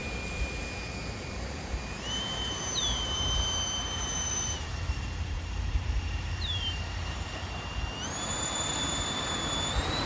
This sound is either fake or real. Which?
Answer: fake